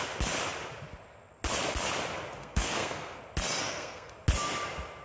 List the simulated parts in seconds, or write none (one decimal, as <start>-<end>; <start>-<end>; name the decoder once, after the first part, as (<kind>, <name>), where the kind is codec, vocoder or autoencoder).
2.4-3.2 (codec, SNAC); 3.6-4.1

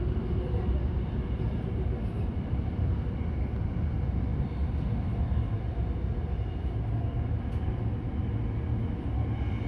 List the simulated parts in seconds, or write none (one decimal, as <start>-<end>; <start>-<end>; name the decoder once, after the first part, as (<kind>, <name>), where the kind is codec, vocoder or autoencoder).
none

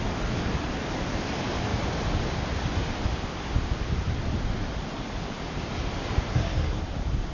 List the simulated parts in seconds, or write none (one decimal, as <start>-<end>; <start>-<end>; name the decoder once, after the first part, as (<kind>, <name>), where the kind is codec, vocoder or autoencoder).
6.3-6.8 (codec, SNAC)

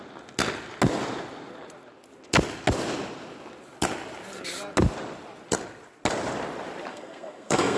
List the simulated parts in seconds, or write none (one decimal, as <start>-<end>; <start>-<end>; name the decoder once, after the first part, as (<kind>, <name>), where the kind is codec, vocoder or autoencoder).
6.9-7.8 (codec, SNAC)